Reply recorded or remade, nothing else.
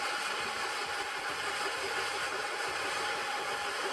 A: recorded